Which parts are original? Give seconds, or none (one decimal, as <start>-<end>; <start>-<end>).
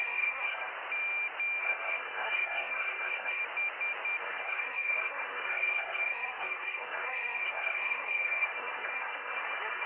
0.7-1.6; 3.4-4.2